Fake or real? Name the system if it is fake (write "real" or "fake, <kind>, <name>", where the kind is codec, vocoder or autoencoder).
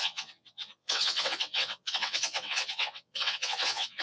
fake, vocoder, WaveNeXt